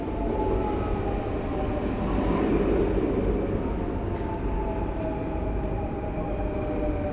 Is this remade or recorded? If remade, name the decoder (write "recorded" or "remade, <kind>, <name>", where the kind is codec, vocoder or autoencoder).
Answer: recorded